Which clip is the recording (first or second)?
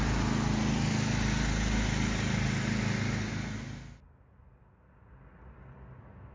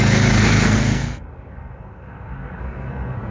first